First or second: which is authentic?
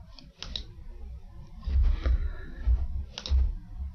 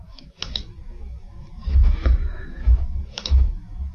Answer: first